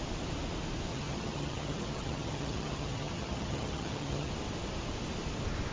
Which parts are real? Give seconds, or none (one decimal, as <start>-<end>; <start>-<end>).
0.0-0.9; 4.3-5.7